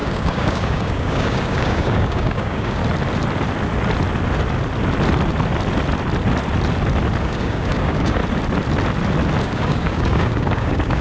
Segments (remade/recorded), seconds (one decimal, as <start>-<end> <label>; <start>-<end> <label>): 0.0-2.8 remade; 2.8-7.2 recorded; 7.2-8.2 remade; 8.2-9.4 recorded; 9.4-11.0 remade